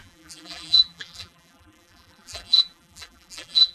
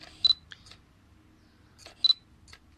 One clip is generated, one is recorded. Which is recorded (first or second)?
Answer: second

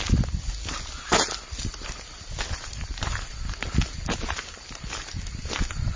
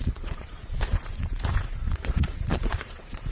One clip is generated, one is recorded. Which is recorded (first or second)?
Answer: first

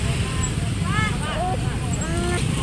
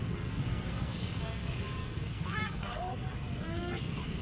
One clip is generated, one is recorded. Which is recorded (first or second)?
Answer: first